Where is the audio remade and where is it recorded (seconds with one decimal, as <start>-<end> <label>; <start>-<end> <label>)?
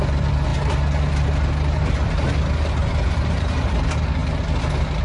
0.0-2.8 recorded; 2.8-3.7 remade; 3.7-5.0 recorded